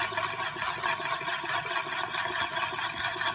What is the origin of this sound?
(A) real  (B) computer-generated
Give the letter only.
A